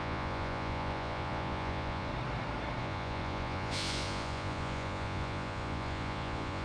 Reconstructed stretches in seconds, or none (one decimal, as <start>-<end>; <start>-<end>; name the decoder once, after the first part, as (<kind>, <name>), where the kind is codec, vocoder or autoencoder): 0.0-2.1 (vocoder, Vocos); 2.8-6.6